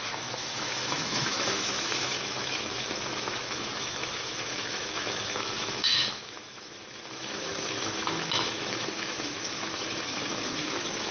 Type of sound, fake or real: fake